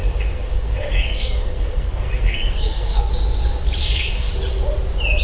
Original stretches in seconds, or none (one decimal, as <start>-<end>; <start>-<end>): 3.1-3.8; 4.3-5.2